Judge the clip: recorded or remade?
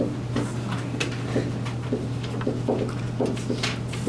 recorded